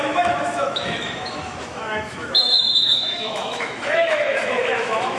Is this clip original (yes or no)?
no